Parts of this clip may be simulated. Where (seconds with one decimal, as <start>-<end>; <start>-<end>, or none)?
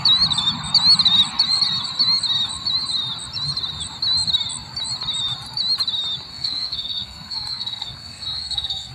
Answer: 6.3-8.9